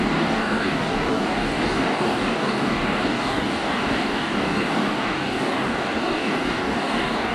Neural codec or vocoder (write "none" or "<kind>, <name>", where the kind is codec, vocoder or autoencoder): codec, DAC